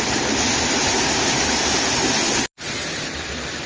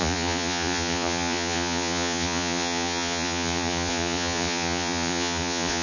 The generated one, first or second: second